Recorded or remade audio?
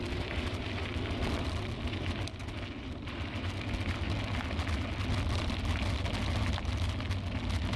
recorded